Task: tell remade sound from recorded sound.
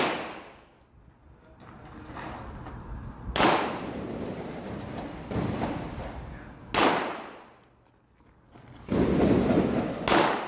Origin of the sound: recorded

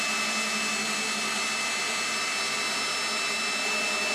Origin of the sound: recorded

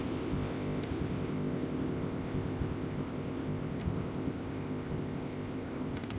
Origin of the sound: remade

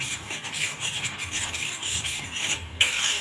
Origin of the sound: remade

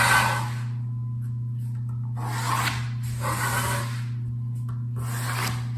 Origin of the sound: recorded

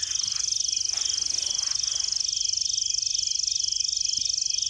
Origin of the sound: recorded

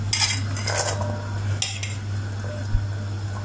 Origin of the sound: recorded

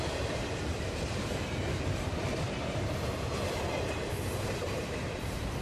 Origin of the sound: remade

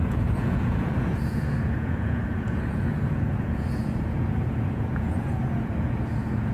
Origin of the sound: remade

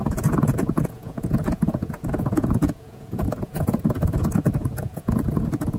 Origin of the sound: remade